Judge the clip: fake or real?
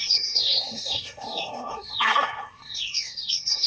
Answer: fake